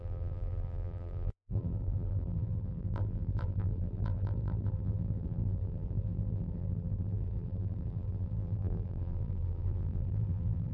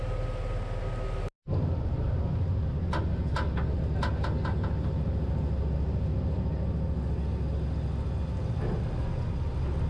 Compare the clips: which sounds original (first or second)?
second